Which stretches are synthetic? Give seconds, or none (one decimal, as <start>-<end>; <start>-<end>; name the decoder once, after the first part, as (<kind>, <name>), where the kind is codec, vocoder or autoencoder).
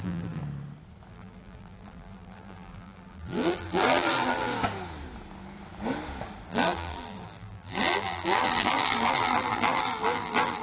0.0-0.4 (vocoder, BigVGAN v2); 1.1-4.5; 6.5-10.6